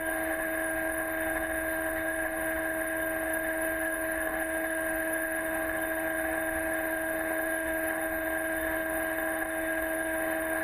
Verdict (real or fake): fake